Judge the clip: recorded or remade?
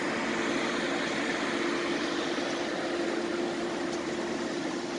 recorded